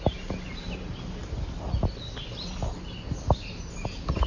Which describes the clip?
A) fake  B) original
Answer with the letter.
B